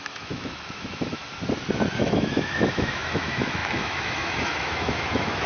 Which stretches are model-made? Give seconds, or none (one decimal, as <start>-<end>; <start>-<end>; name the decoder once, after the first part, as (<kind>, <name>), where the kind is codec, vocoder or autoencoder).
0.0-1.2 (autoencoder, DAC-VAE); 2.0-5.5